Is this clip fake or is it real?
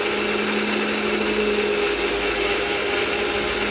real